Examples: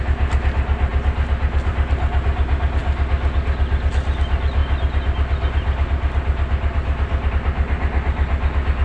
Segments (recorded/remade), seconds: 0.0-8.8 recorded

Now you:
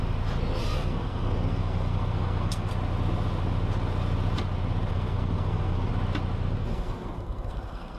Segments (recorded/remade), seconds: 0.0-0.6 recorded; 0.6-2.7 remade; 2.7-4.9 recorded; 4.9-5.9 remade; 5.9-6.6 recorded; 6.6-8.0 remade

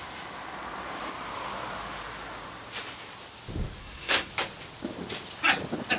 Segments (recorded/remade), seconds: 0.0-3.8 recorded; 3.8-4.3 remade; 4.3-6.0 recorded

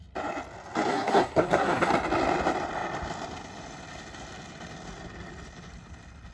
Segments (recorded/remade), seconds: 0.0-0.9 recorded; 0.9-1.9 remade; 1.9-6.3 recorded